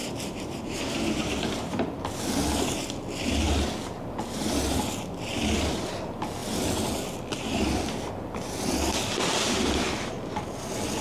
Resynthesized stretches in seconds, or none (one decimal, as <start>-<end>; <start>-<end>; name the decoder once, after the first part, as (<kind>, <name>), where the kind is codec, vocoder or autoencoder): 0.0-2.0 (vocoder, BigVGAN v2)